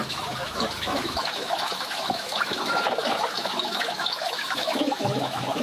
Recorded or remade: remade